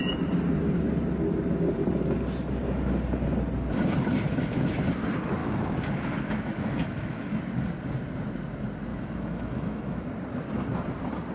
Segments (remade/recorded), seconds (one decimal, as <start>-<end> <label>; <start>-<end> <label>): 0.0-5.4 recorded; 5.4-7.4 remade; 7.4-8.9 recorded; 8.9-10.1 remade; 10.1-11.3 recorded